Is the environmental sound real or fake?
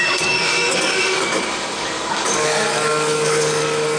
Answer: fake